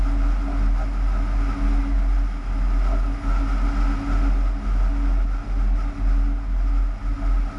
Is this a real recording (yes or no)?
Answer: yes